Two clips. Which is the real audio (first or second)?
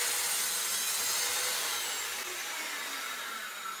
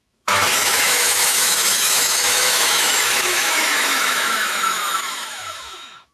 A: first